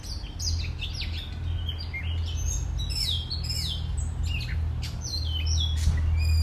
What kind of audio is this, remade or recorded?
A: recorded